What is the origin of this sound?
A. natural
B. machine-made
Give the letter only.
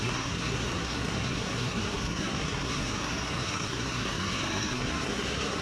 B